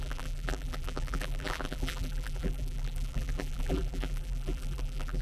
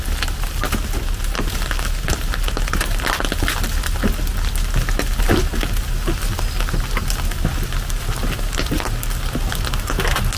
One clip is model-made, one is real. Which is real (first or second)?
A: second